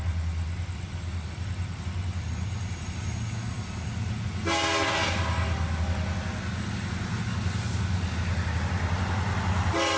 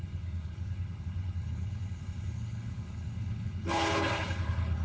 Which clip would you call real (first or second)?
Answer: first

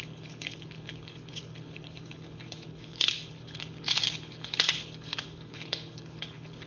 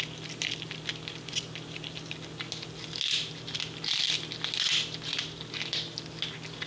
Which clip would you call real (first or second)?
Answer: second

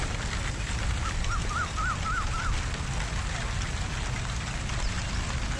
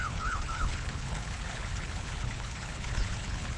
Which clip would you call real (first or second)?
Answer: first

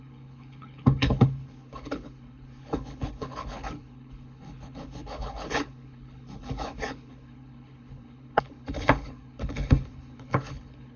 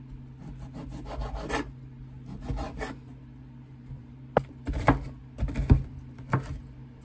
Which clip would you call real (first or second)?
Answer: second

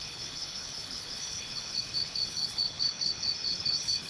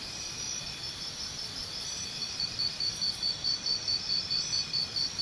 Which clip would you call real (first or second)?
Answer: second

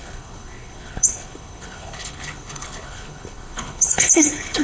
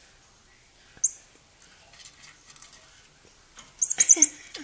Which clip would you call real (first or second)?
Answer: second